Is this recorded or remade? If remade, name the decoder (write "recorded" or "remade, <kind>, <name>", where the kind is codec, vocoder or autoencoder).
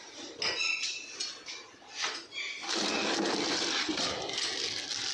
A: recorded